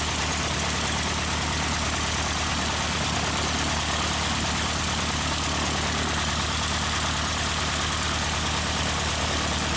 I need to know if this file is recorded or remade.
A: recorded